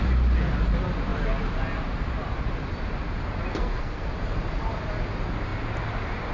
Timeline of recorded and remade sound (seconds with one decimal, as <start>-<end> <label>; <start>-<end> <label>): 0.0-3.5 recorded; 3.5-4.1 remade; 4.1-6.3 recorded